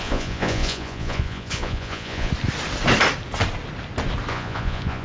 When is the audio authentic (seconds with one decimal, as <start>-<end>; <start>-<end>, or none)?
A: 2.3-4.3